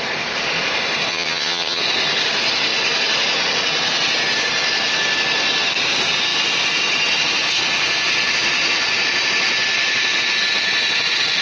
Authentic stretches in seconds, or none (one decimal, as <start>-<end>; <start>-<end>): 0.0-1.1; 1.8-11.4